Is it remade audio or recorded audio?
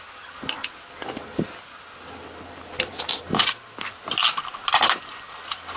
recorded